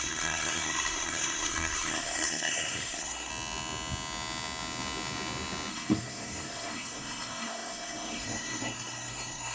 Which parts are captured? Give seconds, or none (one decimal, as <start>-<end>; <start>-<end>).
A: 3.3-5.7